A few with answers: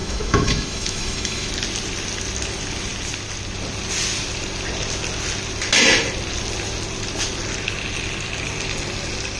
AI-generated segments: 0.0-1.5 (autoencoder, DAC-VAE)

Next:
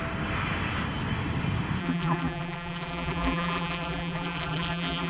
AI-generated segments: 1.8-5.1 (vocoder, BigVGAN v2)